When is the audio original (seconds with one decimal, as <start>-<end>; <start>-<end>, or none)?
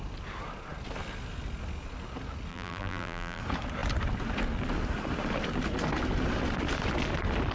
0.0-2.5; 3.4-7.5